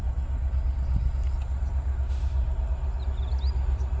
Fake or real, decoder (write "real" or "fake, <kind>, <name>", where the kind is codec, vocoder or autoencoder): real